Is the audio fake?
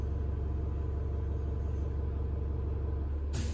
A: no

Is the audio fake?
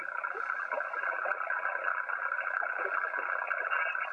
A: yes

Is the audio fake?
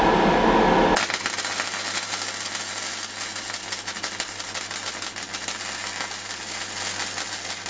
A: no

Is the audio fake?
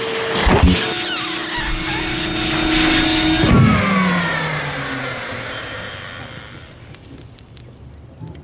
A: no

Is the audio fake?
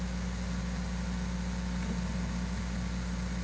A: no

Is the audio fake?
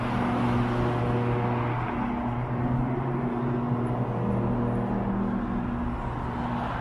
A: no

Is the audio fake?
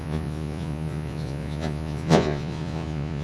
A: yes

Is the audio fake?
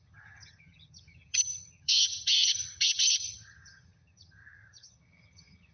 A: yes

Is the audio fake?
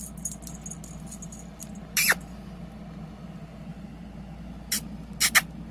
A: no